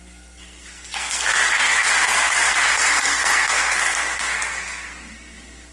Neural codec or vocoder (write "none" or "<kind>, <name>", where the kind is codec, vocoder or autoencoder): codec, SNAC